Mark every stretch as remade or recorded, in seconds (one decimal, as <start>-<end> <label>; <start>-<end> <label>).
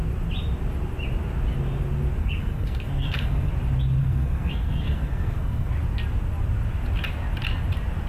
0.0-2.2 recorded; 2.2-3.5 remade; 3.5-4.0 recorded; 4.0-5.7 remade; 5.7-8.1 recorded